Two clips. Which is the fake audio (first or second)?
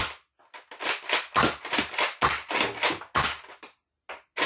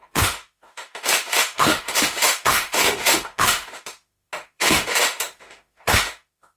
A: second